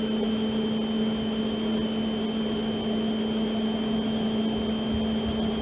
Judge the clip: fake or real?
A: real